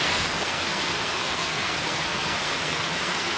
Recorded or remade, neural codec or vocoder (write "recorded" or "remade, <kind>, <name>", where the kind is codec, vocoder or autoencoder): remade, codec, SNAC